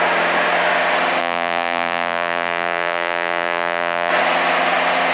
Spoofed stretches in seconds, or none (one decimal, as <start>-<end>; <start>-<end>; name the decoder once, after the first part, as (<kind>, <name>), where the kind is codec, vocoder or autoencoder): 1.2-4.1 (vocoder, BigVGAN v2)